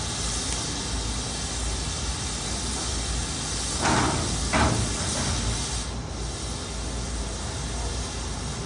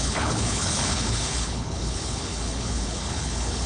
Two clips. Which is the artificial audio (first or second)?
second